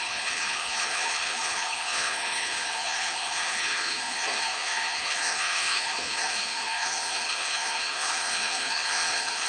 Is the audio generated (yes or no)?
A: yes